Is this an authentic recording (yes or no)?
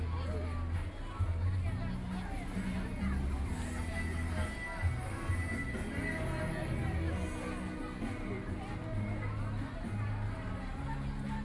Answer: yes